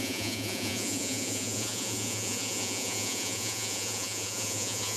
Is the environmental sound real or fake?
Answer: fake